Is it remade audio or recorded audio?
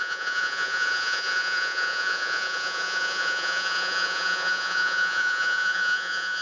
remade